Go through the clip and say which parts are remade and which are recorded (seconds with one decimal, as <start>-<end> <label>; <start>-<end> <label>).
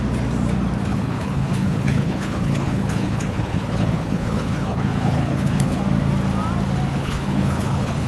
0.0-0.9 recorded; 0.9-5.8 remade; 5.8-6.9 recorded; 6.9-8.1 remade